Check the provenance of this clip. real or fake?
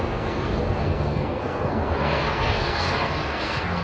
fake